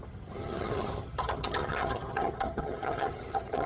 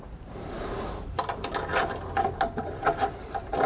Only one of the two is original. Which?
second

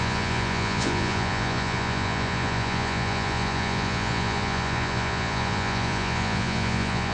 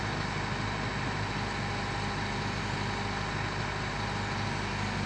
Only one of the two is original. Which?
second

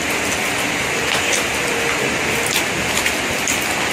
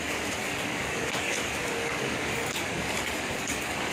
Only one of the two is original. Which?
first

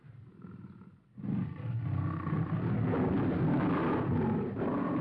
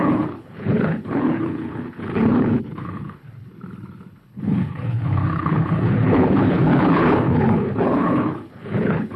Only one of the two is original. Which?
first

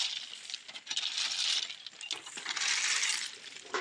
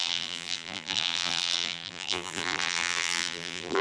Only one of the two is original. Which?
first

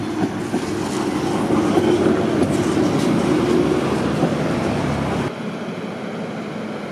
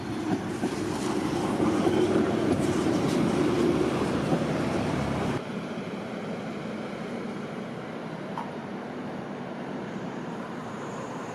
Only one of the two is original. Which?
first